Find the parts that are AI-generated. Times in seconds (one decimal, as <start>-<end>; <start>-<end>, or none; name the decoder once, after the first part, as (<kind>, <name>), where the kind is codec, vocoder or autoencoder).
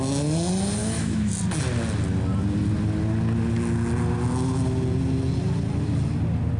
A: 0.8-1.3 (autoencoder, DAC-VAE)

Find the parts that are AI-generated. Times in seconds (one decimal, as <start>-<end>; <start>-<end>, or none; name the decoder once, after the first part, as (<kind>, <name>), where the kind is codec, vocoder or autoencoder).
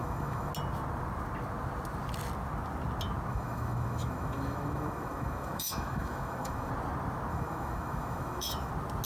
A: 0.0-0.5 (autoencoder, DAC-VAE); 3.3-6.7; 7.3-8.7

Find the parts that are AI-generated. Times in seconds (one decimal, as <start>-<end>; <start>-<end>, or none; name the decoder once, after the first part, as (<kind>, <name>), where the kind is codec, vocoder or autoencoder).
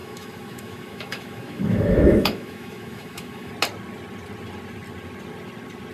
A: 0.0-3.5 (autoencoder, DAC-VAE)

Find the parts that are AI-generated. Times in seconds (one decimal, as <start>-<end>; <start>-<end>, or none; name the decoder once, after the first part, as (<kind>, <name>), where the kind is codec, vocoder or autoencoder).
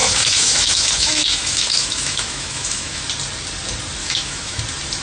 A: 0.0-3.0 (autoencoder, DAC-VAE); 4.0-4.6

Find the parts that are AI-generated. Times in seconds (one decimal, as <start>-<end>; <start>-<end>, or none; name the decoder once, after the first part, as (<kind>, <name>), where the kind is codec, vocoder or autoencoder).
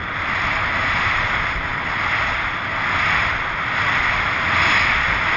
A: none